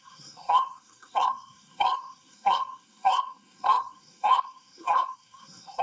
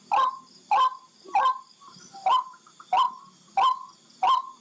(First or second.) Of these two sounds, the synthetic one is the first